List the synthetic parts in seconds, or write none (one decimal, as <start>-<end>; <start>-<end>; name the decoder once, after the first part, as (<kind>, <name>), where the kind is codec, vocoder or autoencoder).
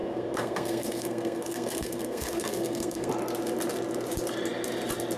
0.0-3.1 (codec, SNAC)